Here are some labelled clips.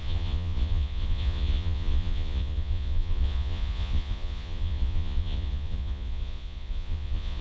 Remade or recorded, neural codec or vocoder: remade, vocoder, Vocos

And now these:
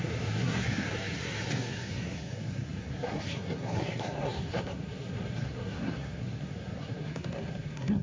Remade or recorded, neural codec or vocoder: remade, codec, SNAC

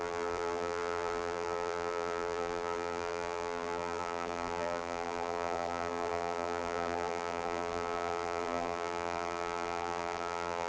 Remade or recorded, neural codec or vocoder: remade, vocoder, BigVGAN v2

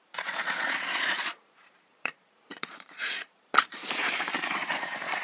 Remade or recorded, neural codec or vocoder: remade, vocoder, Vocos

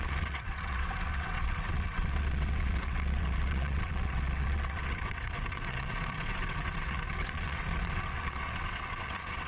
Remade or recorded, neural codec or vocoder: remade, vocoder, WaveNeXt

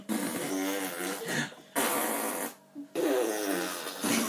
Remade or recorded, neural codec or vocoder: recorded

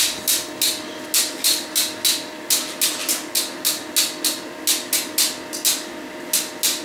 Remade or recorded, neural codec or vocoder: recorded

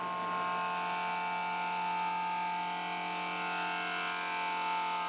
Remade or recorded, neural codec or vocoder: recorded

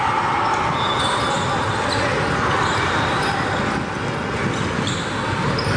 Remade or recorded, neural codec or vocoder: recorded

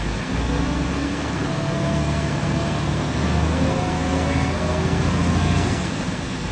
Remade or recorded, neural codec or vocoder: remade, codec, SNAC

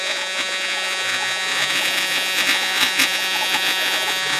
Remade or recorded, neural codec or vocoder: remade, vocoder, Vocos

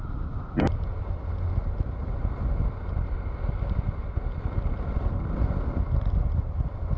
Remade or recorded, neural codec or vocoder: recorded